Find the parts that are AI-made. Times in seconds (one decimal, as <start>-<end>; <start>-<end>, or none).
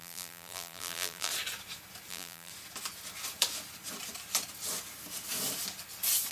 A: 0.0-1.3; 2.1-2.5